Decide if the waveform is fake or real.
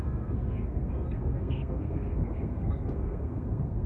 fake